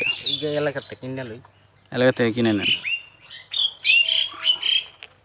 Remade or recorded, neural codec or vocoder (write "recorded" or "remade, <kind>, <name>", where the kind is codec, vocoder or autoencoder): recorded